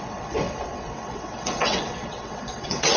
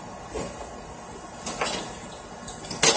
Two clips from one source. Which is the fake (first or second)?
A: first